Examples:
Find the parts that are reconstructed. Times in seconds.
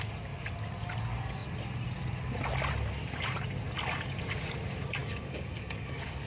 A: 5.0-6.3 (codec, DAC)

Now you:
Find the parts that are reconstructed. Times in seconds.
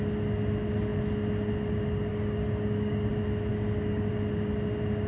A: 2.1-3.1 (codec, DAC); 3.5-4.1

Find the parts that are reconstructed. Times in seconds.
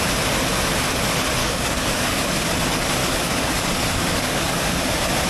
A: 1.4-2.5 (codec, DAC); 3.0-4.7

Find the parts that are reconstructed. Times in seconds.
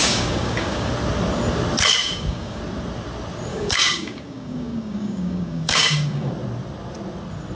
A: 0.0-0.9 (codec, DAC); 2.0-2.6; 3.5-6.3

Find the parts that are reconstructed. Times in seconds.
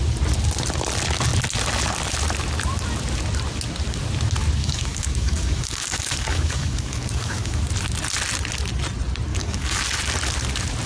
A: 4.6-7.6 (codec, DAC); 9.3-9.8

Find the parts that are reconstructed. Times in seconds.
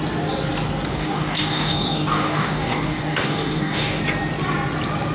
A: 0.9-4.0 (codec, DAC)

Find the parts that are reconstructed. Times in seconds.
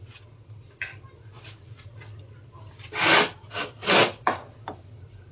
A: none